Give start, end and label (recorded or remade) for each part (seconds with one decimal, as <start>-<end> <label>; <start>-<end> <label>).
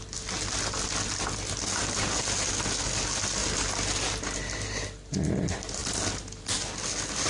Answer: 0.0-7.3 recorded